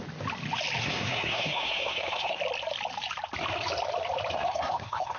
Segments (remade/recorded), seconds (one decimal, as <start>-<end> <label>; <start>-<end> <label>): 0.0-0.8 recorded; 0.8-2.4 remade; 2.4-4.3 recorded; 4.3-5.2 remade